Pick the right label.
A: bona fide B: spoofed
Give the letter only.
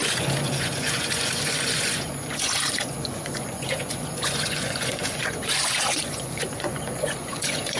B